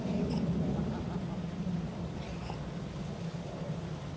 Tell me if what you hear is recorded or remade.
recorded